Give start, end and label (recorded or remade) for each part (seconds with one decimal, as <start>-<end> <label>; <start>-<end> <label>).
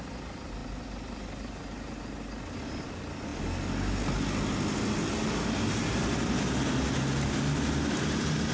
0.0-8.5 recorded